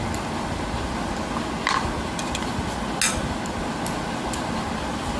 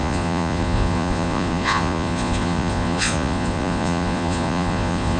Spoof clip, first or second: second